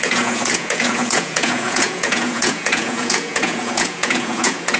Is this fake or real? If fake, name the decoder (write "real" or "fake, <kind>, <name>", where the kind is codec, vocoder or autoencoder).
fake, vocoder, Vocos